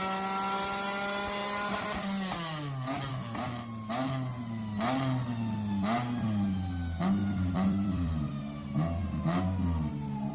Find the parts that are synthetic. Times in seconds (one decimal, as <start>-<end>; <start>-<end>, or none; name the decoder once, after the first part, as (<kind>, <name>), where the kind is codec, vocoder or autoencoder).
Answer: 7.2-8.4 (vocoder, BigVGAN v2)